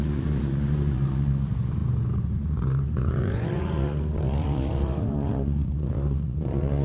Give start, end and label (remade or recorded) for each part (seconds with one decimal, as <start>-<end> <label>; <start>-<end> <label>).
0.0-6.8 remade